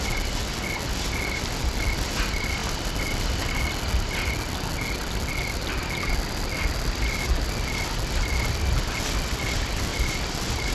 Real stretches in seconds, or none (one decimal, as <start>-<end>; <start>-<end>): 0.0-10.7